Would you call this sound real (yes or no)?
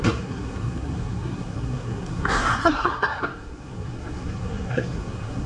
no